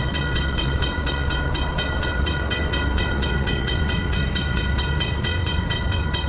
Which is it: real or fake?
fake